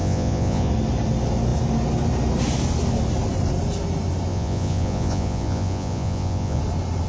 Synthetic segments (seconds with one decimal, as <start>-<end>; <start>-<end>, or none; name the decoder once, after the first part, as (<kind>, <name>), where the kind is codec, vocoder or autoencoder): 0.0-0.7 (vocoder, Vocos); 4.3-6.6